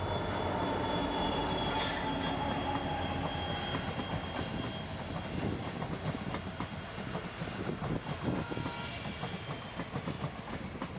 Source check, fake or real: real